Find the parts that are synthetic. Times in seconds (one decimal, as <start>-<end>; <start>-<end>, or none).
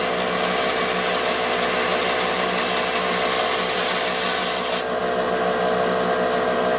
none